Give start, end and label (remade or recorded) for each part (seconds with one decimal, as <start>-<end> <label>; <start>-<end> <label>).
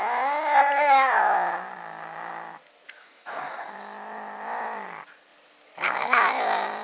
0.0-3.0 recorded; 3.0-3.7 remade; 3.7-6.8 recorded